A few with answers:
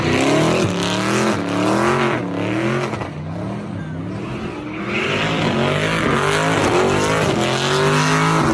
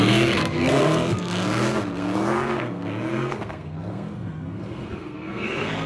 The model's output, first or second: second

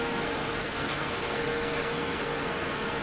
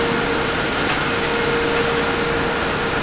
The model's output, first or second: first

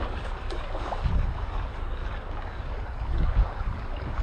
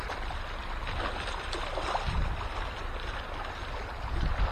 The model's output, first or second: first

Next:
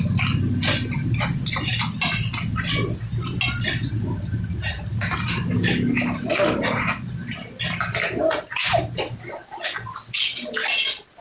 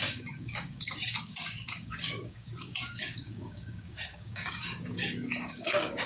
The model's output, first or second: second